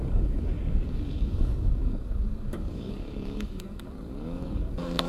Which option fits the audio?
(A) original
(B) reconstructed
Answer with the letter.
B